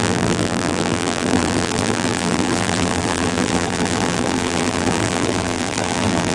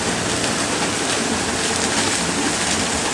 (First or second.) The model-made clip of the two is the first